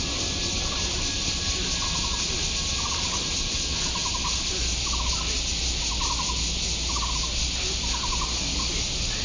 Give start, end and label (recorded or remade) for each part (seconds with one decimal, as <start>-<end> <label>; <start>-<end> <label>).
0.0-9.2 recorded